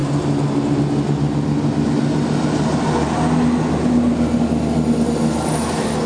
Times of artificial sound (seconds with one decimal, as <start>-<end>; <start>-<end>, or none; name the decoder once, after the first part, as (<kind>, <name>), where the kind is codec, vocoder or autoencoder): none